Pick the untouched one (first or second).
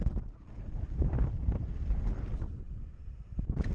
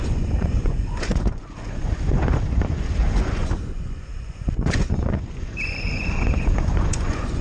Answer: first